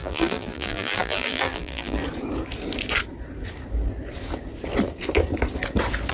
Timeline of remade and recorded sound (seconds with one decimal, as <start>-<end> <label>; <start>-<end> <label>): 0.0-2.0 remade; 2.0-6.1 recorded